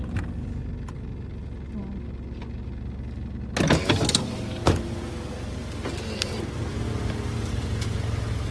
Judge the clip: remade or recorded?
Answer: recorded